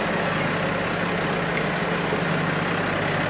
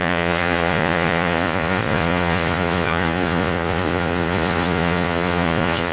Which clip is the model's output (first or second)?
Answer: second